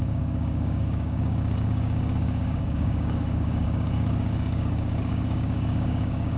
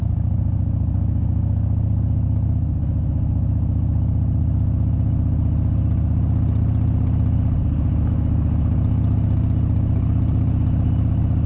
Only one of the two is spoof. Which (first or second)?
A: first